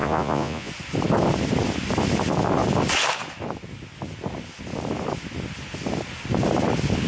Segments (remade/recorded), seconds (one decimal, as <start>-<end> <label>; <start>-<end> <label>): 0.0-0.7 remade; 0.7-7.1 recorded